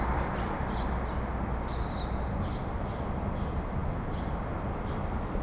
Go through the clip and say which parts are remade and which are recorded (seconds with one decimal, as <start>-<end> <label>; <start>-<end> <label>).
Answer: 0.0-5.4 recorded